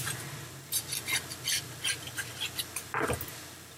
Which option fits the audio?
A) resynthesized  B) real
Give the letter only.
B